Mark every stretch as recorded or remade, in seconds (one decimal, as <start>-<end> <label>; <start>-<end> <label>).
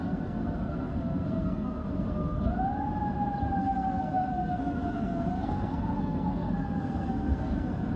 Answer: 0.0-2.5 remade; 2.5-3.6 recorded; 3.6-8.0 remade